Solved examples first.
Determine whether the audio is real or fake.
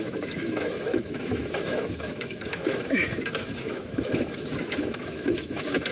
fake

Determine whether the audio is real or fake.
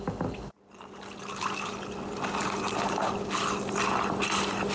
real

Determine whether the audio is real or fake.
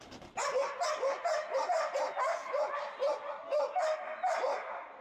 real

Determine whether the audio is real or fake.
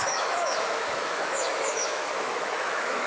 fake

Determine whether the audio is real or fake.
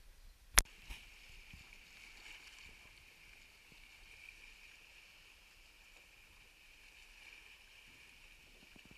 real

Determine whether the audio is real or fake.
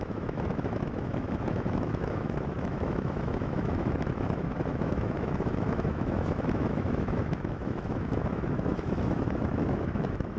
fake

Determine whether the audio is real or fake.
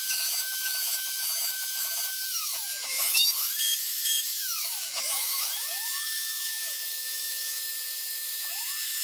fake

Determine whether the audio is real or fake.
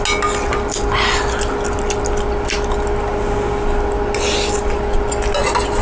real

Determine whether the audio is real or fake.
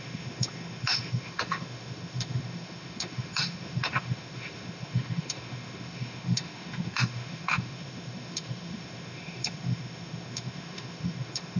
fake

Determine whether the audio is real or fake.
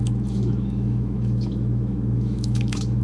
fake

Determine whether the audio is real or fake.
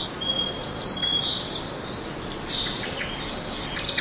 real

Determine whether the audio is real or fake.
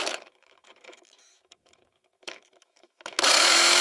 fake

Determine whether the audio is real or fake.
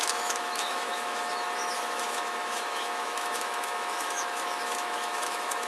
fake